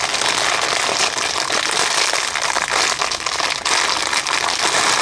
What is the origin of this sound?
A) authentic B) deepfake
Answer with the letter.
A